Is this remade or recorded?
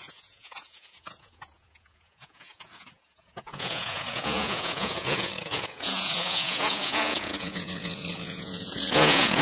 remade